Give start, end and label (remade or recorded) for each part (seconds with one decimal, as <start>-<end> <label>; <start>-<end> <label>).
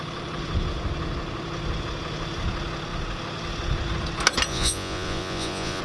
0.0-4.5 recorded; 4.5-5.8 remade